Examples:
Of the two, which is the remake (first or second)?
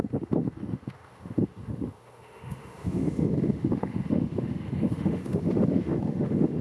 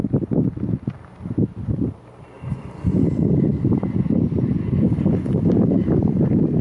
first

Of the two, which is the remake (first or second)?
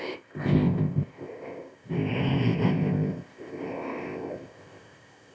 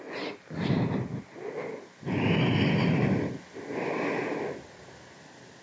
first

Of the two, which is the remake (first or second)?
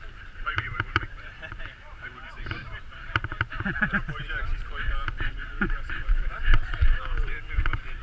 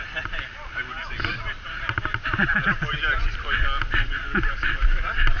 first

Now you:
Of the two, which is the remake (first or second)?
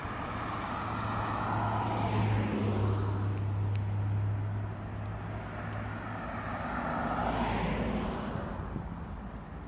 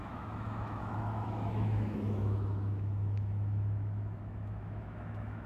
second